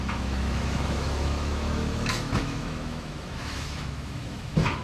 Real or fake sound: fake